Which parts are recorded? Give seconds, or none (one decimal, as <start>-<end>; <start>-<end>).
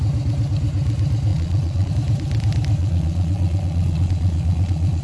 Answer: 0.0-1.3; 1.9-2.8